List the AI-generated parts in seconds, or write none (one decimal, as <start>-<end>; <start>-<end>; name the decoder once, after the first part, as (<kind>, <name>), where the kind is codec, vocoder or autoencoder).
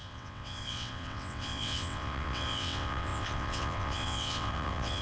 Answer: 0.0-5.0 (vocoder, WaveNeXt)